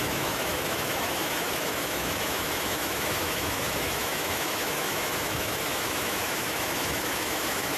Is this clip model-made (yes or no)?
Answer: yes